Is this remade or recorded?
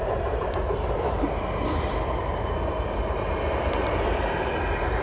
remade